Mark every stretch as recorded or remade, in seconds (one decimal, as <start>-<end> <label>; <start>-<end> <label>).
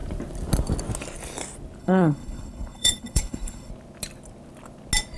0.0-1.8 recorded; 1.8-3.7 remade; 3.7-5.2 recorded